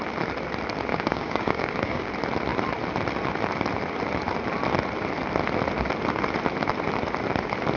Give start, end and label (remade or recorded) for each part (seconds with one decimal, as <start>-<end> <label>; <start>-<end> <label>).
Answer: 0.0-0.9 recorded; 0.9-2.1 remade; 2.1-7.8 recorded